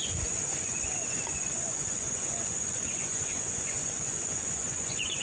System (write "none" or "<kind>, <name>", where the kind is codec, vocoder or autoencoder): vocoder, Vocos